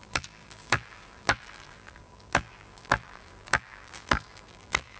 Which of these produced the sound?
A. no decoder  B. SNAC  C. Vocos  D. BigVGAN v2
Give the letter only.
D